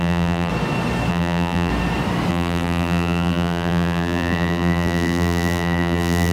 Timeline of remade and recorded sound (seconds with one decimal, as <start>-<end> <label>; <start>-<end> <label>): 0.0-0.5 remade; 0.5-1.1 recorded; 1.1-1.7 remade; 1.7-2.3 recorded; 2.3-6.3 remade